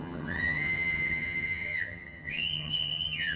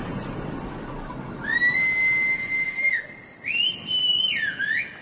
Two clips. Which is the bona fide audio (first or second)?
second